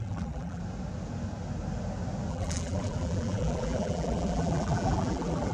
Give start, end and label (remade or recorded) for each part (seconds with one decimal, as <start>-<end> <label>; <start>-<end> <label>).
0.0-0.6 remade; 0.6-2.3 recorded; 2.3-5.5 remade